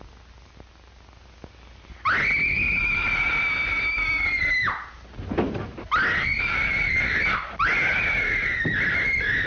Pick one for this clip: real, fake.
real